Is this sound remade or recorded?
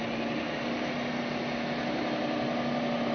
recorded